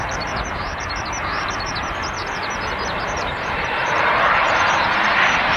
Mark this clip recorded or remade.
remade